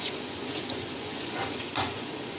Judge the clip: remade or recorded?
remade